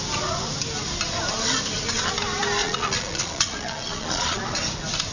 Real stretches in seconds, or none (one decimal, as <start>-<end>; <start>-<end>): 0.0-2.6; 4.4-5.1